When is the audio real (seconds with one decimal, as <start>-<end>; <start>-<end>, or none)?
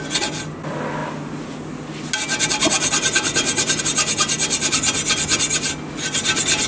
0.0-6.7